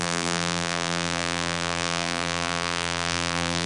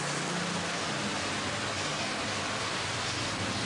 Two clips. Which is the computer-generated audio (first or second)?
first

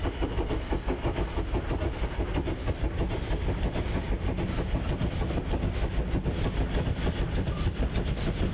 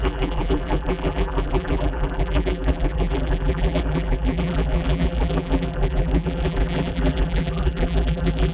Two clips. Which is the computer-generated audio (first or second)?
second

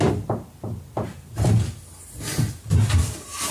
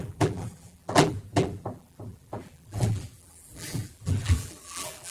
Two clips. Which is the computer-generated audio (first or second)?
second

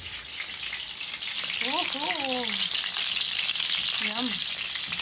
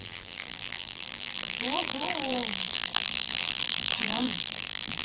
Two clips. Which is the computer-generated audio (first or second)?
second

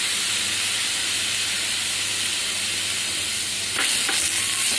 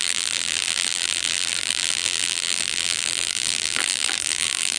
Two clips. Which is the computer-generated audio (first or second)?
second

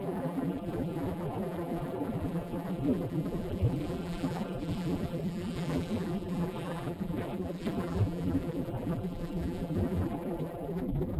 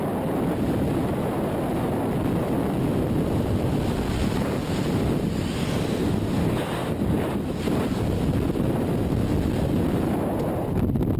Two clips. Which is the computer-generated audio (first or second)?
first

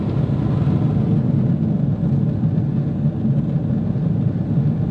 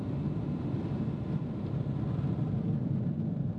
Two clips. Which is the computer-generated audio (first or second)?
second